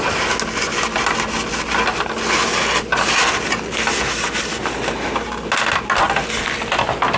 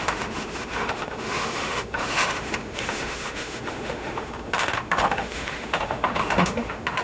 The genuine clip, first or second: first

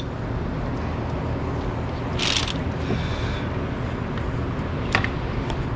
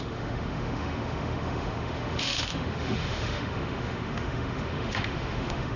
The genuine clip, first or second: first